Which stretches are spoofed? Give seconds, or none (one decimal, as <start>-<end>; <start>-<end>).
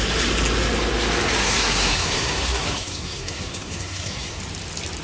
1.4-4.4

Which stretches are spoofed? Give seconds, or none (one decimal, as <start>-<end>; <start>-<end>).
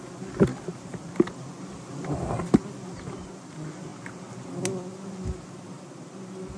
none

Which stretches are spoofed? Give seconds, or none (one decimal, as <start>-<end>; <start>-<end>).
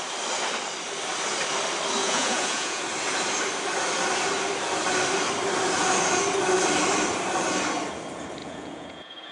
2.0-2.8; 8.4-9.3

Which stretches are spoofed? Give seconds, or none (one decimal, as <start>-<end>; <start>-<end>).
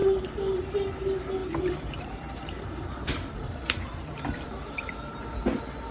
1.4-4.9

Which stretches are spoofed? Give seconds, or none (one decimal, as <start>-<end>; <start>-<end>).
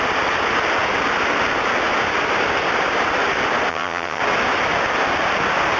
3.7-4.2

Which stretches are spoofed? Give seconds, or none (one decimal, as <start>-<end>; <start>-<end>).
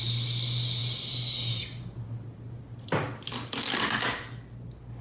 none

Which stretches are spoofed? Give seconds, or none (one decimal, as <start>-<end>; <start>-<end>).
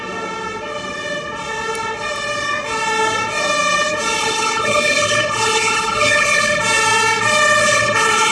4.2-6.6; 7.6-8.3